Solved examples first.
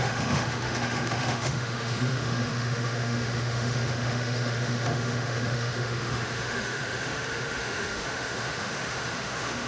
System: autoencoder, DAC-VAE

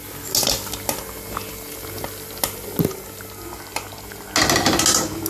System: none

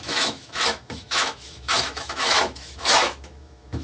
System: autoencoder, DAC-VAE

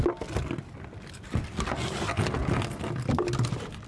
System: none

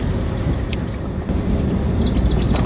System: none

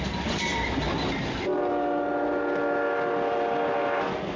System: none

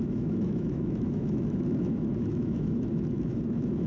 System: autoencoder, DAC-VAE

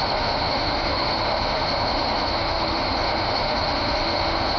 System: autoencoder, DAC-VAE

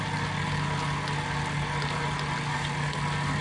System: none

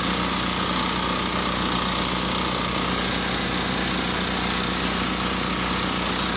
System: none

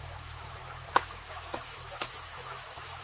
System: autoencoder, DAC-VAE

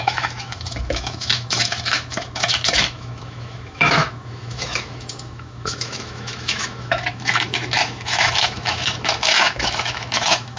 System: autoencoder, DAC-VAE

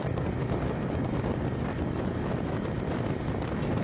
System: none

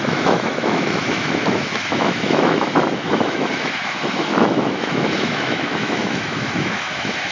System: autoencoder, DAC-VAE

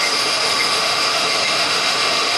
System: autoencoder, DAC-VAE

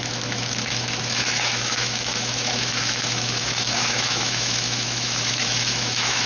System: autoencoder, DAC-VAE